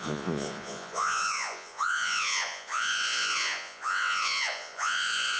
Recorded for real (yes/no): no